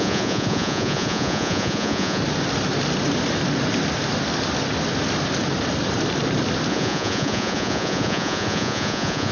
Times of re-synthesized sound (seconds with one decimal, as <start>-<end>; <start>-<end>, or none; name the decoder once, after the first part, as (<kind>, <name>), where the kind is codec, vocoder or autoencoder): 0.0-2.2 (vocoder, Vocos); 6.7-9.3